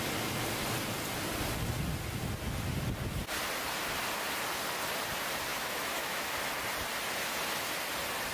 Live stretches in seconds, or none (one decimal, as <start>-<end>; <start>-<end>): 0.0-5.5; 6.3-8.3